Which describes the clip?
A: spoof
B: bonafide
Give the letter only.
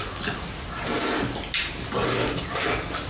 B